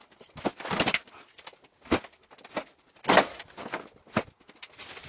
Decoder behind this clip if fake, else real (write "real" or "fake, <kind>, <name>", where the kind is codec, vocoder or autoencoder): real